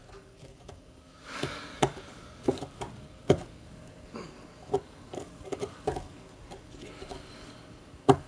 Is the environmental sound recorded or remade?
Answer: remade